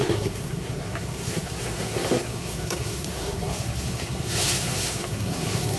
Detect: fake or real fake